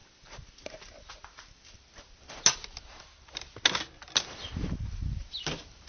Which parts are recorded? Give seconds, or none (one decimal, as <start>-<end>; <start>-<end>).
0.0-5.9